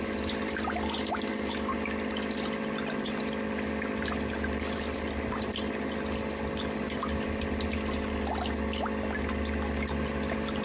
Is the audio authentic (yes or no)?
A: yes